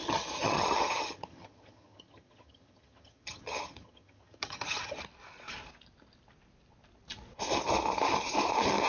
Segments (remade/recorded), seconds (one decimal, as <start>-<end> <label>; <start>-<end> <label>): 0.0-5.0 remade; 5.0-8.9 recorded